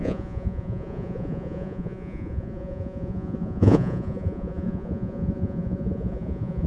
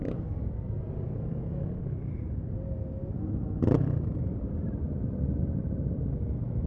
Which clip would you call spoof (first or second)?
first